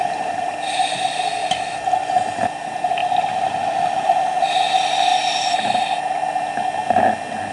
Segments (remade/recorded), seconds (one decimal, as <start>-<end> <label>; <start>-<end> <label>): 0.0-7.5 recorded

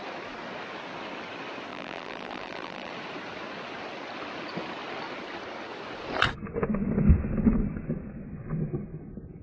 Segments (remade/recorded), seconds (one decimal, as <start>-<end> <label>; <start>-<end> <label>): 0.0-1.7 recorded; 1.7-2.9 remade; 2.9-9.4 recorded

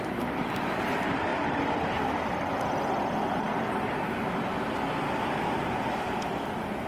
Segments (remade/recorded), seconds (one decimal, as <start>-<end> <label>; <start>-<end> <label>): 0.0-6.9 remade

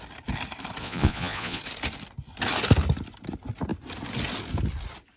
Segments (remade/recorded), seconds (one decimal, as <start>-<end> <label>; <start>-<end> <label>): 0.0-0.8 recorded; 0.8-1.6 remade; 1.6-5.2 recorded

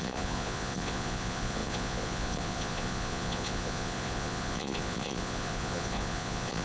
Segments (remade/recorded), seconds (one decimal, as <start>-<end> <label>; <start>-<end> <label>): 0.0-6.6 remade

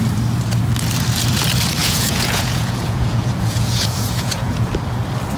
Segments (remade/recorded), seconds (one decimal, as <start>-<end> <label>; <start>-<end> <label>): 0.0-1.8 recorded; 1.8-4.7 remade; 4.7-5.4 recorded

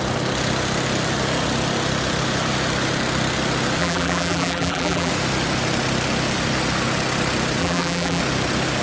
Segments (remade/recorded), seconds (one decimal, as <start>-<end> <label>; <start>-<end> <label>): 0.0-3.8 recorded; 3.8-5.1 remade; 5.1-7.6 recorded; 7.6-8.2 remade; 8.2-8.8 recorded